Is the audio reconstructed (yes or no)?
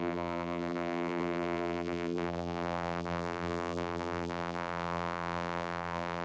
yes